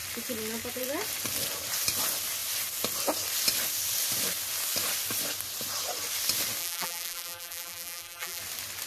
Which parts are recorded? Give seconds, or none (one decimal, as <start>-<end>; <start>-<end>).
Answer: 0.0-6.6; 8.4-8.9